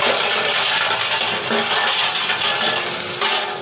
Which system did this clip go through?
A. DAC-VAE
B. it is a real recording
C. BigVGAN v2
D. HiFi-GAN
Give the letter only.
B